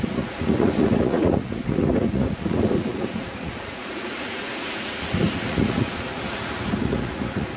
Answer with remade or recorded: remade